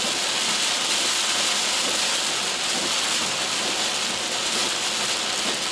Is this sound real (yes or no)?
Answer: yes